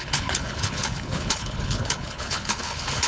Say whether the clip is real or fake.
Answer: fake